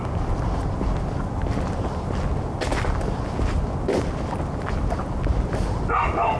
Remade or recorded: recorded